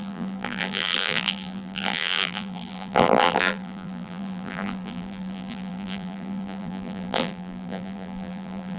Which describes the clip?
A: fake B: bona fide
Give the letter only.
A